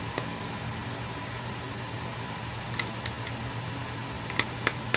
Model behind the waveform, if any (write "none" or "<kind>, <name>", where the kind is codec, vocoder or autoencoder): none